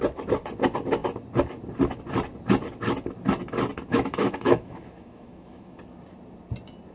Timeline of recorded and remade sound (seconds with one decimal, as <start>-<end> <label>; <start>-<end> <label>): 0.0-3.9 recorded; 3.9-5.8 remade; 5.8-6.9 recorded